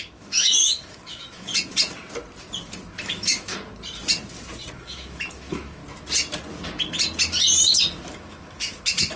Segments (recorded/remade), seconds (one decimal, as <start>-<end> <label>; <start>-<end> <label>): 0.0-1.5 remade; 1.5-3.0 recorded; 3.0-3.5 remade; 3.5-4.7 recorded; 4.7-5.8 remade; 5.8-8.0 recorded; 8.0-9.2 remade